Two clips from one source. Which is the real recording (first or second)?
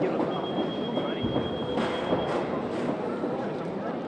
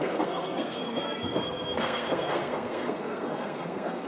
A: first